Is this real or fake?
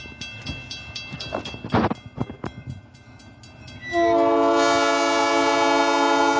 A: real